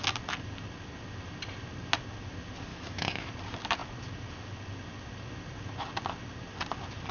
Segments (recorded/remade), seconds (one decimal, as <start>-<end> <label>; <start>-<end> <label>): 0.0-2.7 recorded; 2.7-3.3 remade; 3.3-7.1 recorded